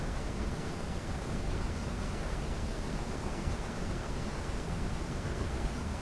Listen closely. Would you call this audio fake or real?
fake